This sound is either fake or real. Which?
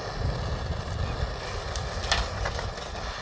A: real